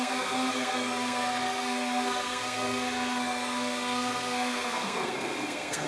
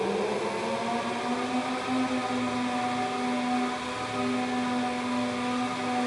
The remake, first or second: first